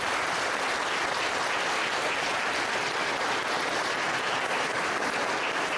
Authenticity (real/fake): real